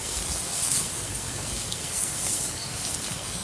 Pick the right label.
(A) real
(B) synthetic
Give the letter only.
B